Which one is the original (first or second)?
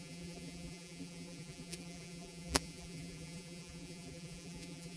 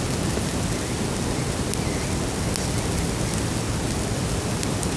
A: second